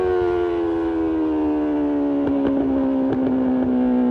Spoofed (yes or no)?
no